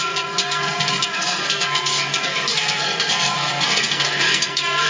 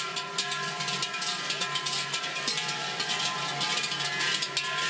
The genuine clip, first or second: second